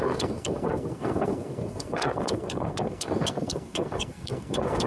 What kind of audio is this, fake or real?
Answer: fake